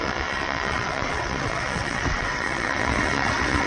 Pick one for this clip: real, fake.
fake